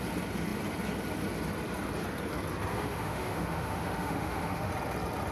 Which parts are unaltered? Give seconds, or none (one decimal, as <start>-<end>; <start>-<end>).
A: 0.0-2.7; 4.7-5.3

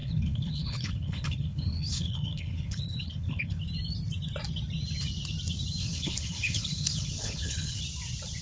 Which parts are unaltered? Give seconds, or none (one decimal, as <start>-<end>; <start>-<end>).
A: 3.6-5.8; 7.8-8.4

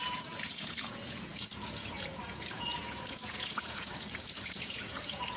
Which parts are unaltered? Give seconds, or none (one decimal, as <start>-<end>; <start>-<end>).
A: none

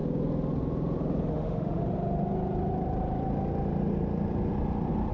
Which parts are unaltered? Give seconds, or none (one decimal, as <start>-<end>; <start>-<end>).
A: 0.0-1.3; 1.8-5.1

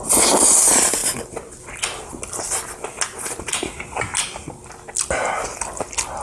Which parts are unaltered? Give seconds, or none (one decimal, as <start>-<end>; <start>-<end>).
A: 0.0-6.2

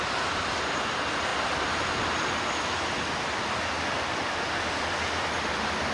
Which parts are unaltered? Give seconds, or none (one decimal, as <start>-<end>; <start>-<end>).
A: 0.0-5.9

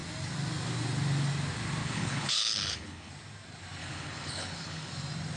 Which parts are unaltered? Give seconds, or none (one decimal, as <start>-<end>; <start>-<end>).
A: 0.0-1.8; 3.1-3.8; 4.9-5.4